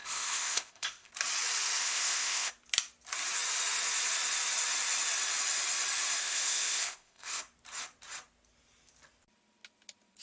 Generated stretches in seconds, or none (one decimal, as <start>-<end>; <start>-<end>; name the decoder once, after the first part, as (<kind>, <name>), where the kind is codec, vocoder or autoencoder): 0.0-1.1 (codec, ZipCodec); 1.8-2.5; 6.2-7.4